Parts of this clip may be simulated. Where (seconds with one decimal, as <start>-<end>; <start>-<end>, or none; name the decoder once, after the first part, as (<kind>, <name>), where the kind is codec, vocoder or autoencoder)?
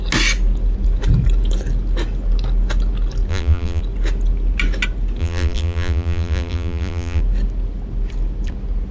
3.3-3.8 (vocoder, BigVGAN v2); 5.2-7.2